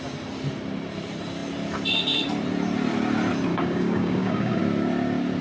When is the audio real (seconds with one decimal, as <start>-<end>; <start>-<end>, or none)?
0.0-3.5; 4.6-5.4